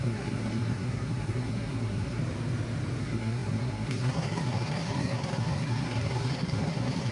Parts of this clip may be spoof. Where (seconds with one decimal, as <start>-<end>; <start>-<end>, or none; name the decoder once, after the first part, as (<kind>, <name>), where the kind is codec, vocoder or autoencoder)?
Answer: 0.0-2.2 (codec, SNAC); 3.0-7.1